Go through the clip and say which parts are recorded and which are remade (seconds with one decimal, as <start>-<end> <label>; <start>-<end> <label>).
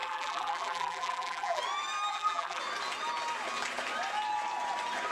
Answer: 0.0-1.6 remade; 1.6-2.1 recorded; 2.1-2.6 remade; 2.6-5.1 recorded